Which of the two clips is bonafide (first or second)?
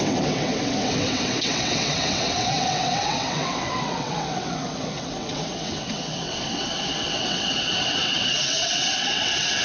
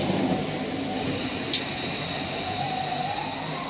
second